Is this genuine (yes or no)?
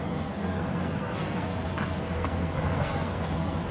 no